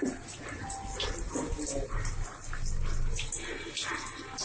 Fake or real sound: real